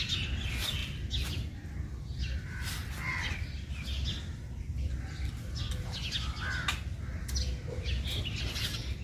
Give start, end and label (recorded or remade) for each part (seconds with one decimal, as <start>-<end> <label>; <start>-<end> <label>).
0.0-9.0 recorded